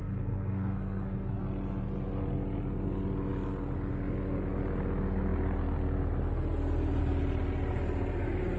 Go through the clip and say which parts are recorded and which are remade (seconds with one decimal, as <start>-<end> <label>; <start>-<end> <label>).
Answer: 0.0-1.4 remade; 1.4-8.6 recorded